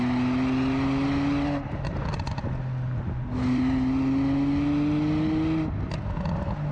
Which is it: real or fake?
real